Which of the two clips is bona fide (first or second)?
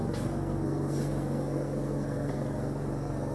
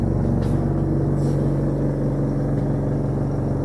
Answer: second